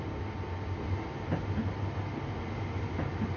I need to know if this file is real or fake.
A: real